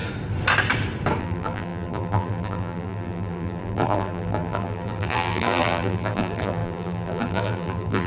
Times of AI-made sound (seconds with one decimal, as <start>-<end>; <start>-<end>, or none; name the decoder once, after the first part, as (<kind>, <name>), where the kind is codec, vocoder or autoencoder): 1.2-8.1 (vocoder, BigVGAN v2)